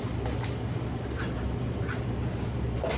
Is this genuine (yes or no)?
yes